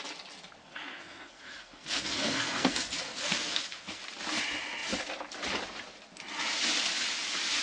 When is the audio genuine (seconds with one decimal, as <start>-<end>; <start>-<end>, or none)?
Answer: 0.0-0.6; 4.0-7.6